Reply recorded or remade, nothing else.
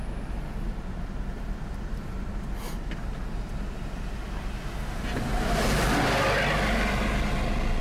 recorded